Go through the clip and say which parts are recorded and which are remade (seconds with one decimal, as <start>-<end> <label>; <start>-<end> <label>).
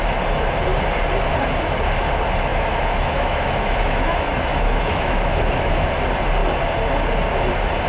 0.0-2.5 recorded; 2.5-5.9 remade; 5.9-7.9 recorded